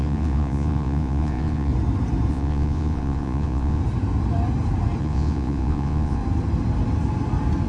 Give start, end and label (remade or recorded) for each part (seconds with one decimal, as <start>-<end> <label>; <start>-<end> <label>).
0.0-1.7 remade; 1.7-2.3 recorded; 2.3-3.8 remade; 3.8-5.0 recorded; 5.0-6.2 remade; 6.2-7.7 recorded